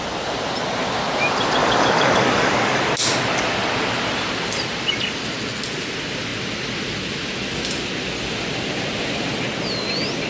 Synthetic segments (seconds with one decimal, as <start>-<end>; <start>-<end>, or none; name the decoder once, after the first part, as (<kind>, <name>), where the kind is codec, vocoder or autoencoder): 1.6-2.8 (codec, DAC)